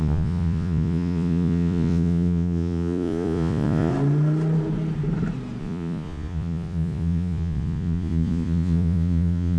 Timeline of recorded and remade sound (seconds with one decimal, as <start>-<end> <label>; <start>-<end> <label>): 0.0-3.9 remade; 3.9-5.6 recorded; 5.6-9.6 remade